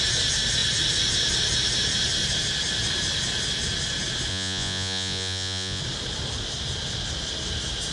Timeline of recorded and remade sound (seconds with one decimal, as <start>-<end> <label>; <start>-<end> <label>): 0.0-4.3 recorded; 4.3-5.8 remade; 5.8-7.9 recorded

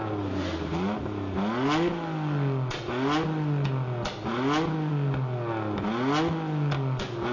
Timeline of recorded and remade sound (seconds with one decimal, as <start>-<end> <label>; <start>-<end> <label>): 0.0-7.3 recorded

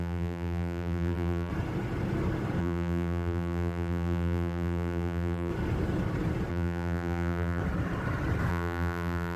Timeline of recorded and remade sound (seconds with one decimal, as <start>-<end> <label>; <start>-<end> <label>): 0.0-1.5 remade; 1.5-2.6 recorded; 2.6-5.5 remade; 5.5-6.5 recorded; 6.5-7.6 remade; 7.6-8.5 recorded; 8.5-9.4 remade